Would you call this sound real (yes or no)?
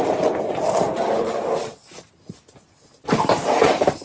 yes